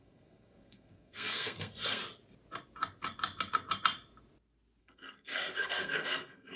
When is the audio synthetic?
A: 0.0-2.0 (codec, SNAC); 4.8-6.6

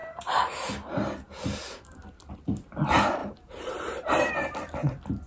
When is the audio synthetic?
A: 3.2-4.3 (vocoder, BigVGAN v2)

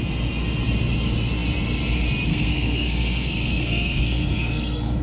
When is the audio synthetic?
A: 2.3-5.0 (codec, SNAC)

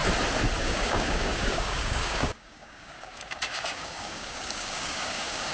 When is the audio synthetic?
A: 0.6-5.5 (codec, DAC)